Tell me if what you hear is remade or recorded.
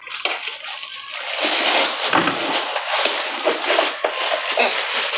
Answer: recorded